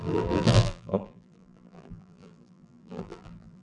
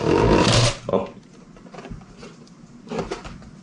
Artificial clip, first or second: first